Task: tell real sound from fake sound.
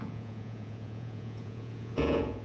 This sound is fake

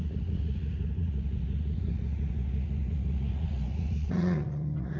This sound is fake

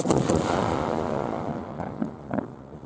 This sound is fake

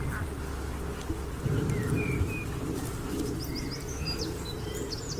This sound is real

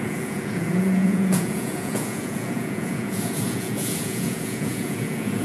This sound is fake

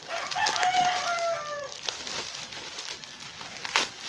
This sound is real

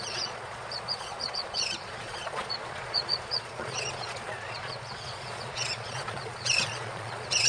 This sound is fake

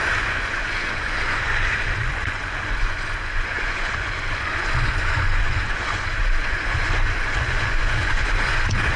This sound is fake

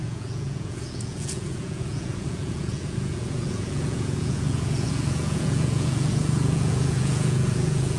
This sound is fake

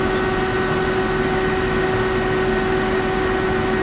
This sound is real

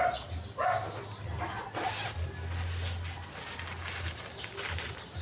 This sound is real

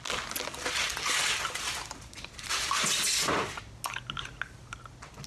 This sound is real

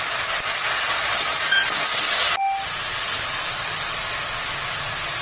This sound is real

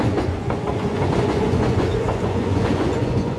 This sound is fake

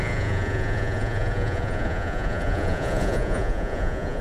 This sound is fake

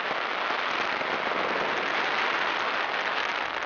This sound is real